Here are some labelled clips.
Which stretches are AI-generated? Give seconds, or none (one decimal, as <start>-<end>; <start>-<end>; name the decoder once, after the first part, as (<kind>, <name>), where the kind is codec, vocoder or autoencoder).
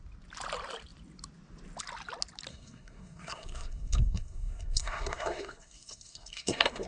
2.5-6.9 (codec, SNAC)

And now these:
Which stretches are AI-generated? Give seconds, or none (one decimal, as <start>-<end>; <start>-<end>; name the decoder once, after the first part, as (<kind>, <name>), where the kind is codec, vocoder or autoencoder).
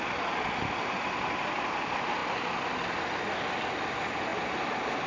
none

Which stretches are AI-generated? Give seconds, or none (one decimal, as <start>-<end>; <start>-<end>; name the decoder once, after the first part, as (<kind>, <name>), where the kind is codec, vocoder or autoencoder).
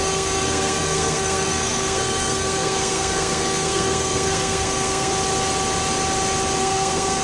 0.0-5.1 (codec, SNAC); 6.6-7.2